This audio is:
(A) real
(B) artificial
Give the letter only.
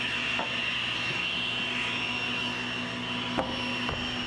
A